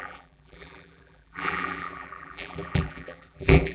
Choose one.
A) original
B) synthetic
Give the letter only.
B